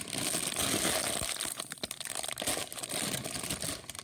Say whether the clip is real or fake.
real